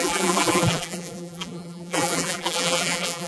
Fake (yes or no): yes